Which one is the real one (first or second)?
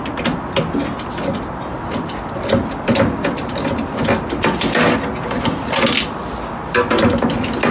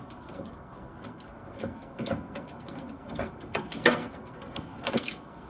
first